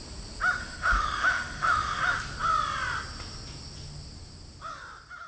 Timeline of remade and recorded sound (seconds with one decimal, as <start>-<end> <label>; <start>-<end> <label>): 0.0-0.6 recorded; 0.6-2.0 remade; 2.0-5.3 recorded